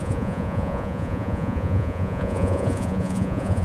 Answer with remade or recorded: remade